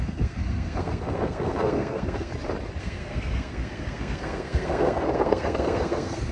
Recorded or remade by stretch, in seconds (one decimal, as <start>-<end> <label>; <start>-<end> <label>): 0.0-2.3 remade; 2.3-2.8 recorded; 2.8-6.3 remade